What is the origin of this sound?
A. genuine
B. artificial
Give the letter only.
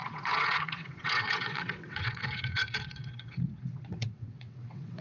B